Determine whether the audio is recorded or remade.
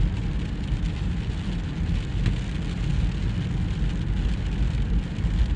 recorded